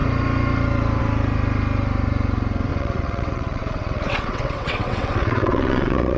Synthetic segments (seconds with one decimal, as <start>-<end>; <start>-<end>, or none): 2.7-6.2